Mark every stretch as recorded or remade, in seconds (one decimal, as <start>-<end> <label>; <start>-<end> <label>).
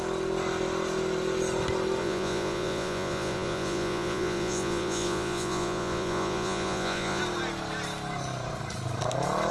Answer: 0.0-2.0 recorded; 2.0-7.2 remade; 7.2-9.5 recorded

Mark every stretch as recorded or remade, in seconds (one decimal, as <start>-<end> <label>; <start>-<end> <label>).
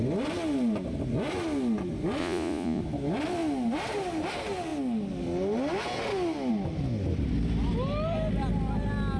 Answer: 0.0-2.2 recorded; 2.2-2.8 remade; 2.8-9.2 recorded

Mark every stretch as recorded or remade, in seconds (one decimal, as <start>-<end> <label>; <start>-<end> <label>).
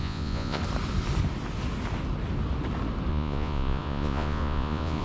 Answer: 0.0-0.6 remade; 0.6-3.1 recorded; 3.1-5.0 remade